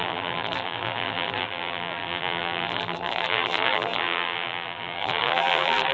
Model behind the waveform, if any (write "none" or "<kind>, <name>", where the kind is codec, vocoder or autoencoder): vocoder, BigVGAN v2